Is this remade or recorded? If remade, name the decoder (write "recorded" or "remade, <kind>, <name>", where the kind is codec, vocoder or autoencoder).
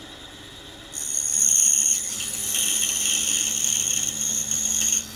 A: remade, vocoder, BigVGAN v2